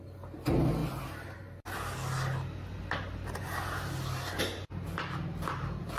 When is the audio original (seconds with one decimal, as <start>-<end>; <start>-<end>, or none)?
0.0-6.0

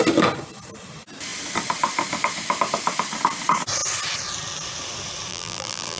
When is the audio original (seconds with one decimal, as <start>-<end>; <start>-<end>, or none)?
0.0-5.3

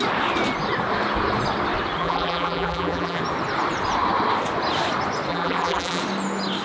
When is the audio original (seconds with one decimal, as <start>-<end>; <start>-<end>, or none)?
0.0-2.0; 3.2-5.3; 6.0-6.6

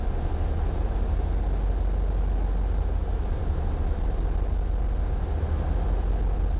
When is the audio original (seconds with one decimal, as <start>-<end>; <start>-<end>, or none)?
0.0-6.6

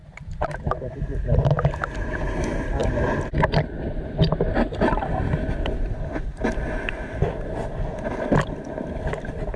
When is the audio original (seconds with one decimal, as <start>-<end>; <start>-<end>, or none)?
1.0-9.6

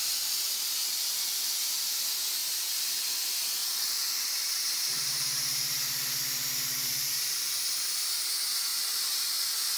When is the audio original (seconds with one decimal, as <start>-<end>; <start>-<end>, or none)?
0.0-2.4; 3.0-3.6; 8.0-8.7; 9.4-9.8

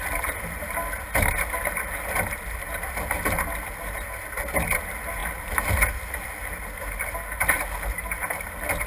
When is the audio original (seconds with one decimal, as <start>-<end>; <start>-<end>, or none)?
0.0-8.9